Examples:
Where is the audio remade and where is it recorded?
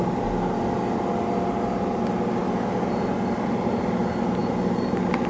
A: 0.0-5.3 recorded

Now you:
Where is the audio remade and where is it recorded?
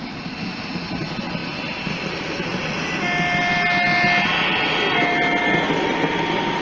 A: 0.0-6.6 recorded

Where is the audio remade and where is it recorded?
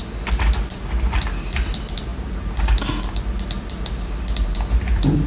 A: 0.0-5.3 recorded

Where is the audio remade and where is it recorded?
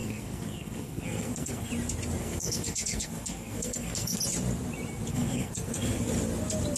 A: 0.0-1.7 remade; 1.7-2.2 recorded; 2.2-4.2 remade; 4.2-5.1 recorded; 5.1-6.0 remade; 6.0-6.8 recorded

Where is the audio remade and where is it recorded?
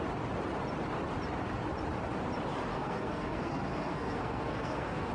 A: 0.0-2.7 recorded; 2.7-5.1 remade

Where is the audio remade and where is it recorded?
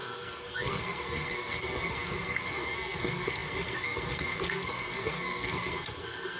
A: 0.0-6.4 remade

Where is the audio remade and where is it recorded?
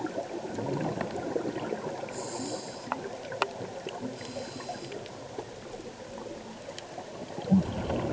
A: 0.0-8.1 recorded